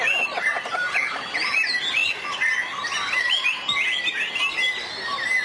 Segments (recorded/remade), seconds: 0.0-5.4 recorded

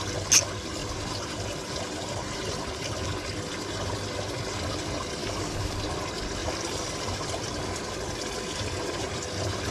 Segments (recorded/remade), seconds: 0.0-5.2 recorded; 5.2-5.8 remade; 5.8-9.7 recorded

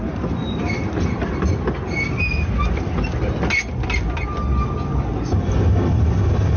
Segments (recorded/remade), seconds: 0.0-6.6 recorded

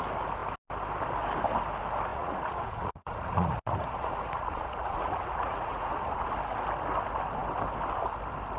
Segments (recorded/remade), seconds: 0.0-2.1 recorded; 2.1-6.3 remade; 6.3-8.6 recorded

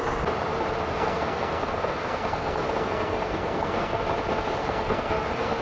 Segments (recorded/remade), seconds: 0.0-0.9 recorded; 0.9-4.0 remade; 4.0-4.6 recorded; 4.6-5.6 remade

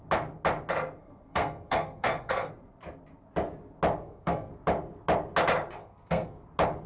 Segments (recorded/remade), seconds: 0.0-1.0 recorded; 1.0-2.5 remade; 2.5-4.0 recorded; 4.0-4.5 remade; 4.5-5.8 recorded; 5.8-6.4 remade; 6.4-6.9 recorded